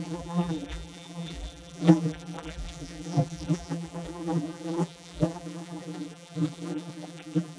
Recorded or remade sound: remade